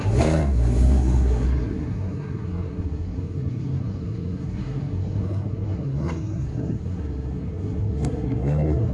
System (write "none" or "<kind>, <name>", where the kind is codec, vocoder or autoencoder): codec, SNAC